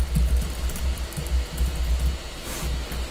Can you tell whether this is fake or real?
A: real